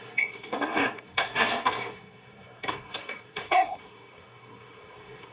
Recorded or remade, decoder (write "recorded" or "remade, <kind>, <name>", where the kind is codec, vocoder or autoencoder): remade, codec, SNAC